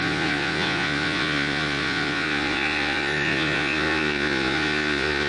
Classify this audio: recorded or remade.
remade